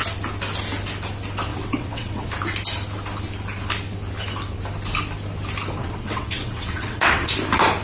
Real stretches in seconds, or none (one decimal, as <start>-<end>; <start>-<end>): 0.0-1.5; 2.3-5.8; 7.3-7.8